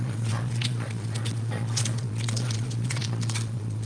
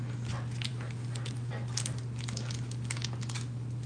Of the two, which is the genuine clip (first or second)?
second